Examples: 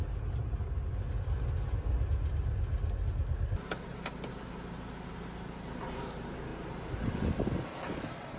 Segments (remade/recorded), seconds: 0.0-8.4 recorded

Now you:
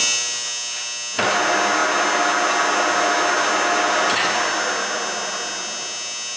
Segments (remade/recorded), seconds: 0.0-6.4 recorded